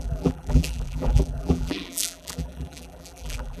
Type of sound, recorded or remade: remade